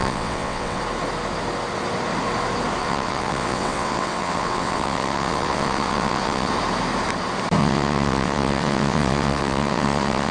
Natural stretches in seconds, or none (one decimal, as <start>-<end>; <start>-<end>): 0.8-2.8; 6.5-7.6

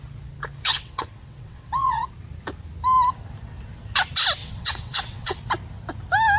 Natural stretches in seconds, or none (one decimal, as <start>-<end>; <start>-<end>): 0.0-0.7; 2.1-4.4; 5.4-6.4

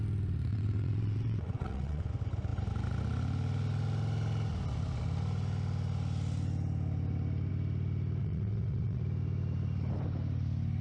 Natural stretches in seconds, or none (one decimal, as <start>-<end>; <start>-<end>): 0.0-0.5; 2.1-8.2; 9.0-10.8

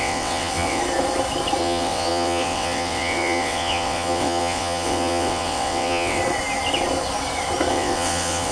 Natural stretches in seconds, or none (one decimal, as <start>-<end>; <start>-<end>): 0.8-1.6; 6.2-7.7